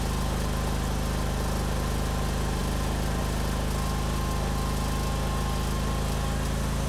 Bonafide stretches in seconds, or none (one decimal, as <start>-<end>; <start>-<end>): 0.0-6.9